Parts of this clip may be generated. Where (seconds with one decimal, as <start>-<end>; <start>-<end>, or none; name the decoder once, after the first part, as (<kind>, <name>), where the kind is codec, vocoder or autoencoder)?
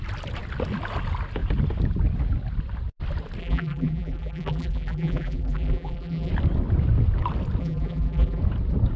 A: 3.4-6.3 (vocoder, BigVGAN v2); 7.6-8.4